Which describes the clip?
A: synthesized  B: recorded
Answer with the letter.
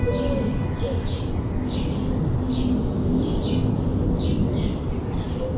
B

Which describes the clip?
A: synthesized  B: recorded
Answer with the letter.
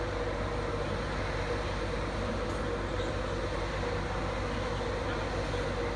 B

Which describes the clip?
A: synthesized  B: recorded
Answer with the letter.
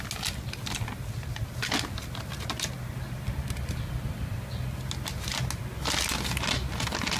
B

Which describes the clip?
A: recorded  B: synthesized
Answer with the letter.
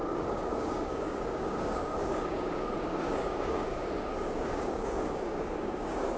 B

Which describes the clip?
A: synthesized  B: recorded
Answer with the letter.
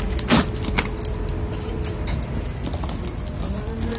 B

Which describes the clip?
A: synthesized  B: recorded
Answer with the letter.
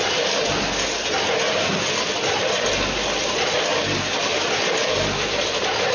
B